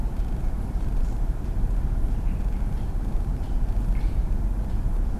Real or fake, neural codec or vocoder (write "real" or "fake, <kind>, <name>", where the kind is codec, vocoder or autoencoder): fake, vocoder, BigVGAN v2